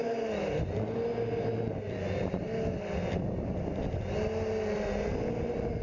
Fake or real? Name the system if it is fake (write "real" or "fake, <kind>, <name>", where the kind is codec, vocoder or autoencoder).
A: real